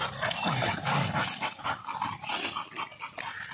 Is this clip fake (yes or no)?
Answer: no